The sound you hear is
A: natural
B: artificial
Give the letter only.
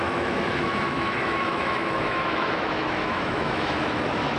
B